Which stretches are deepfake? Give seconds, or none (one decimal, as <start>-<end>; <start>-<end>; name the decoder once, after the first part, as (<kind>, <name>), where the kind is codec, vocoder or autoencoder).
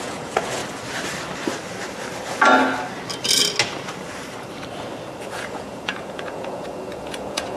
0.0-0.6 (vocoder, Vocos); 5.2-7.6